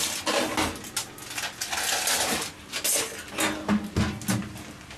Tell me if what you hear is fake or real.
real